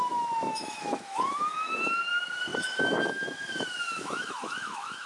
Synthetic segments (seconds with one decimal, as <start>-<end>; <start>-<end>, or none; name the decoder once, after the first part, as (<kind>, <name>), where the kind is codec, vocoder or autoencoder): 0.0-5.1 (autoencoder, DAC-VAE)